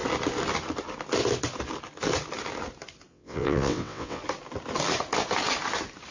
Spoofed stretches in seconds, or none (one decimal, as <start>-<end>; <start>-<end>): 3.1-4.2